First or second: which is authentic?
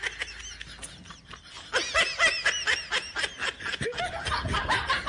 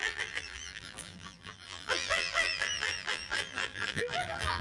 first